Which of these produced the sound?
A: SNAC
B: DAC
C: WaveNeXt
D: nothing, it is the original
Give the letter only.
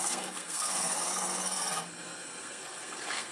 A